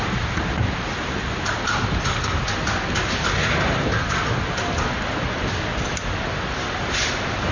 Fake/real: real